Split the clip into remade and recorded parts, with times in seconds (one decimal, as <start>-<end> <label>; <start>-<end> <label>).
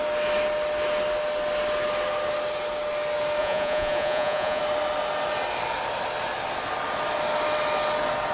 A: 0.0-3.4 recorded; 3.4-4.6 remade; 4.6-8.3 recorded